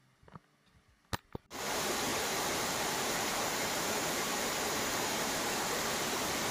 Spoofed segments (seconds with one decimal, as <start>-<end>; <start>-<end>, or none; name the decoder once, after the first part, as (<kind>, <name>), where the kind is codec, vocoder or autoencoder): 2.1-6.0 (vocoder, BigVGAN v2)